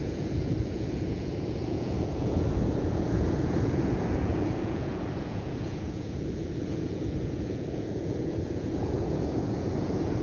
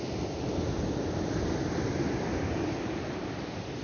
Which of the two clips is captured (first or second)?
second